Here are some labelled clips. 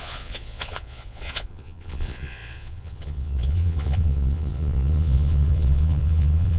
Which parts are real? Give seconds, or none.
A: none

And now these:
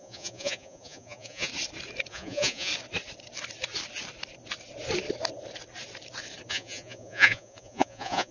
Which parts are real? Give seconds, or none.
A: 1.5-2.1; 2.7-6.5

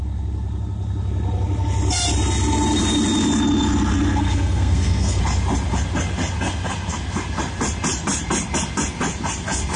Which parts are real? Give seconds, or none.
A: 0.0-4.2; 5.2-9.8